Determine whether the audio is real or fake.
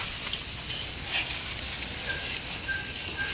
real